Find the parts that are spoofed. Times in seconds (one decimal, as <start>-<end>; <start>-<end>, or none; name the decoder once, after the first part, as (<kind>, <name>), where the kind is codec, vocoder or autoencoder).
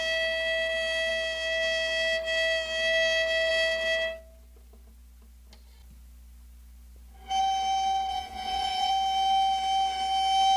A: 8.1-8.9 (vocoder, Vocos)